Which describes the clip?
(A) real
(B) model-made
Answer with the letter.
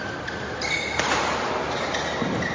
A